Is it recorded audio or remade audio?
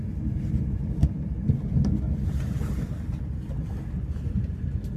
recorded